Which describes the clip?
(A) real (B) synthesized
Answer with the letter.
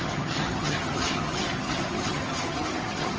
B